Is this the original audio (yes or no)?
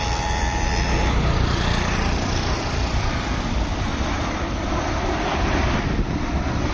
no